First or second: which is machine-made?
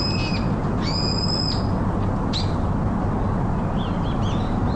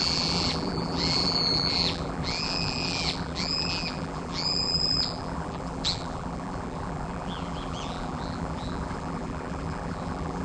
second